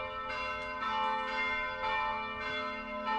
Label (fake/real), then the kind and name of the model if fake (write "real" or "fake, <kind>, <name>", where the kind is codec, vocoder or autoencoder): real